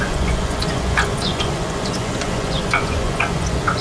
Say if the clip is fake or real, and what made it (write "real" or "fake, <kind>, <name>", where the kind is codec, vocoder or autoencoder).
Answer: fake, vocoder, Vocos